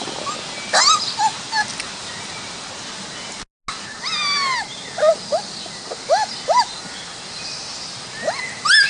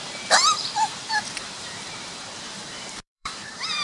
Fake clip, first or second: second